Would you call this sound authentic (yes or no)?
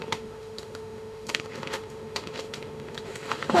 no